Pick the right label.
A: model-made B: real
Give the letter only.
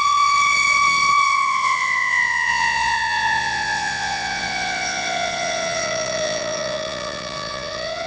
A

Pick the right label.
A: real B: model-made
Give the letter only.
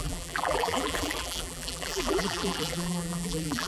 B